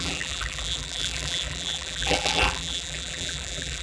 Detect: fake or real fake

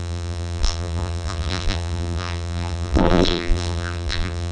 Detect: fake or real fake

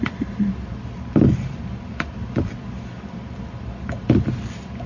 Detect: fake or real real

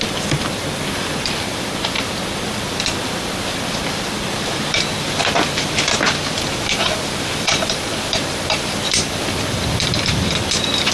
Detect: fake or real fake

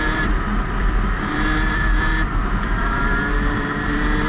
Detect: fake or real fake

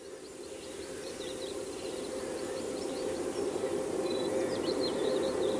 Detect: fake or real fake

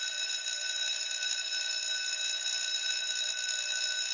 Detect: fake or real real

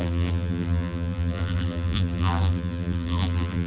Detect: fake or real fake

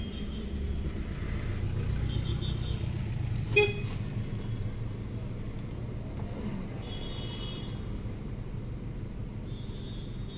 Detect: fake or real real